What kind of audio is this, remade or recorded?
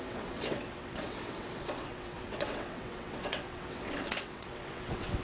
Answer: remade